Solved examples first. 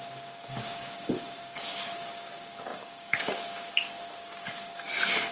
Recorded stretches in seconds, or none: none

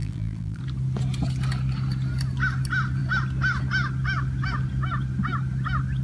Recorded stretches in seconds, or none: 0.6-6.0

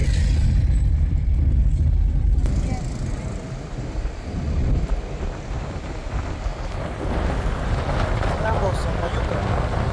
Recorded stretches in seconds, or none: 0.0-8.8; 9.4-9.9

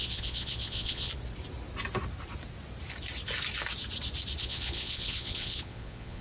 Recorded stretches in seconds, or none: 1.1-4.4

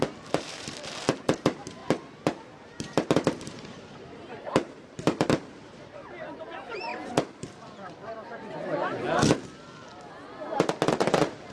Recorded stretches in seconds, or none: 1.8-2.4; 6.9-11.0

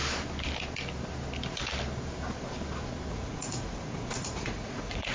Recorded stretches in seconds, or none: 0.0-3.1

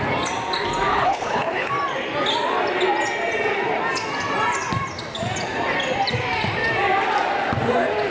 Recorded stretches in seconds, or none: 0.0-0.9; 1.7-8.1

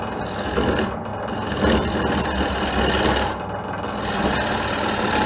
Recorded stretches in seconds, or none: 0.0-5.3